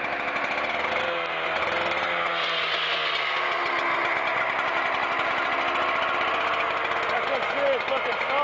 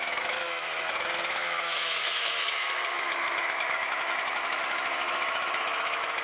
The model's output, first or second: second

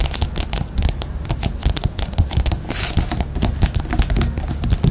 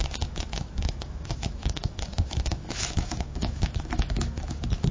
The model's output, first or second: second